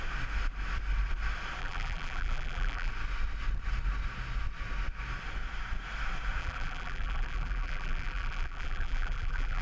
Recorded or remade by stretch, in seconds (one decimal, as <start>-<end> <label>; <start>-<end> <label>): 0.0-1.6 recorded; 1.6-2.9 remade; 2.9-6.4 recorded; 6.4-9.6 remade

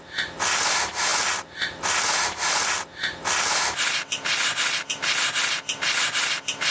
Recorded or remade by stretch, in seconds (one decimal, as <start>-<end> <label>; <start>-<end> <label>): 0.0-6.7 recorded

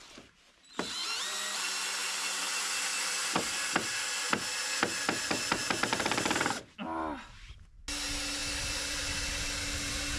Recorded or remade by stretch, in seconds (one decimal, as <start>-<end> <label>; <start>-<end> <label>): 0.0-2.0 recorded; 2.0-3.6 remade; 3.6-8.4 recorded; 8.4-9.1 remade; 9.1-10.2 recorded

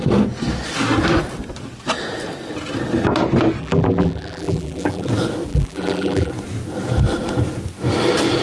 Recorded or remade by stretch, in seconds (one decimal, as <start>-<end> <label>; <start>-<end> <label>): 0.0-3.6 recorded; 3.6-5.1 remade; 5.1-5.5 recorded; 5.5-6.3 remade; 6.3-8.4 recorded

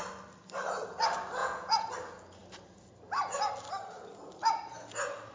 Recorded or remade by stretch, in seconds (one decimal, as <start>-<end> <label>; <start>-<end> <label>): 0.0-1.4 recorded; 1.4-1.9 remade; 1.9-5.3 recorded

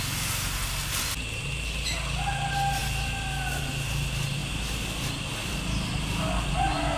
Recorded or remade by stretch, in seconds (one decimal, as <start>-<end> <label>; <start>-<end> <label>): 0.0-7.0 recorded

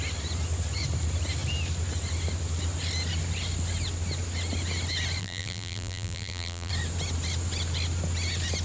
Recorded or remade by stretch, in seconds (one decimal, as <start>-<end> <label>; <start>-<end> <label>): 0.0-5.2 recorded; 5.2-6.7 remade; 6.7-8.6 recorded